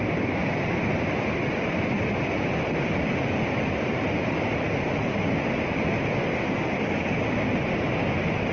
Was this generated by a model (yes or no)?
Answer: yes